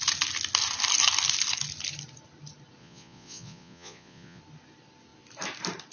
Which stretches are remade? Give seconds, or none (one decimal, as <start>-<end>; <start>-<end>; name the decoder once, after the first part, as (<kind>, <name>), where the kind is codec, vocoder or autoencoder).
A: 2.8-4.4 (vocoder, Vocos)